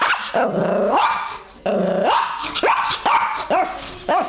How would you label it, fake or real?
real